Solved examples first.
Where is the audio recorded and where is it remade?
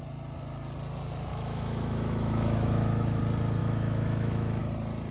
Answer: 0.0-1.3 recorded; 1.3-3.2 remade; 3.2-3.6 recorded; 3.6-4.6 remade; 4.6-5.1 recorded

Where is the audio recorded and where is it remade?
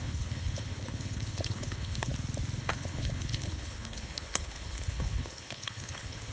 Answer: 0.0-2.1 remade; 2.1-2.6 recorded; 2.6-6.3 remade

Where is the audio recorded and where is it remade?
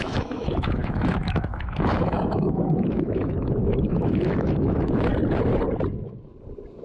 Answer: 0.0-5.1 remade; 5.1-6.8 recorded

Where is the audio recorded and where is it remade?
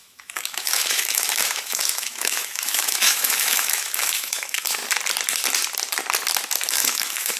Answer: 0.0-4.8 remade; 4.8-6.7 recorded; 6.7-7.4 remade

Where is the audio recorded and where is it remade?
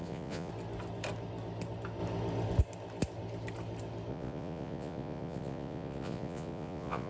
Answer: 0.0-0.5 remade; 0.5-4.1 recorded; 4.1-7.1 remade